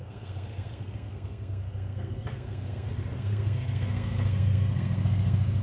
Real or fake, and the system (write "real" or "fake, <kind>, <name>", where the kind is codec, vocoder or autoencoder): fake, codec, SNAC